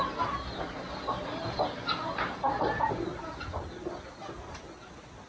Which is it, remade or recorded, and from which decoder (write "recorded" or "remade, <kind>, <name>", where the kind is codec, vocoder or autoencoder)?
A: recorded